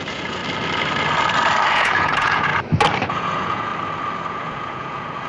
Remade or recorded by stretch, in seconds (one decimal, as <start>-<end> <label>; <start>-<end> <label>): 0.0-0.4 remade; 0.4-1.7 recorded; 1.7-2.5 remade; 2.5-3.1 recorded; 3.1-3.7 remade; 3.7-4.3 recorded; 4.3-5.3 remade